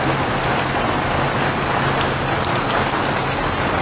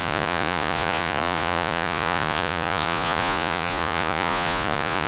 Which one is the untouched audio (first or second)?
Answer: first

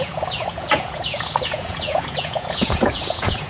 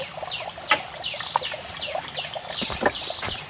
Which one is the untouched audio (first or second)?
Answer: second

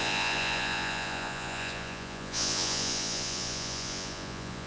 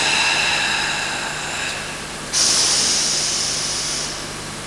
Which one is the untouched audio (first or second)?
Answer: second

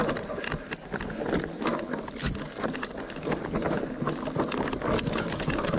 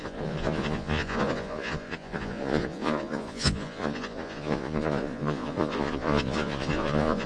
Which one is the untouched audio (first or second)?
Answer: first